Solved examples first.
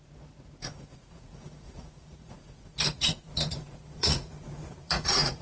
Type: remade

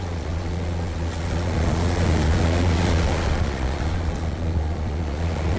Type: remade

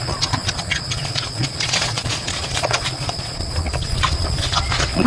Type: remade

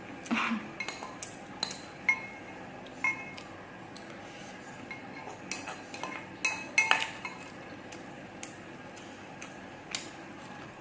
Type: recorded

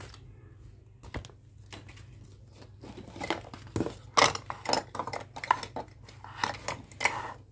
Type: recorded